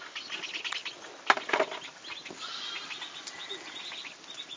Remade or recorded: recorded